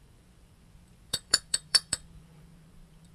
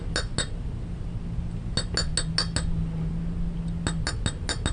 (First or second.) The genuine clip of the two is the second